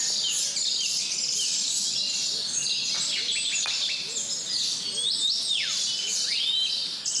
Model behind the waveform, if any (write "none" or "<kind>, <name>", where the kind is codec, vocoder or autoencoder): none